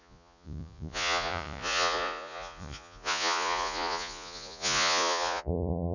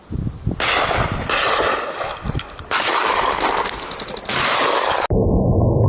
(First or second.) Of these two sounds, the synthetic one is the first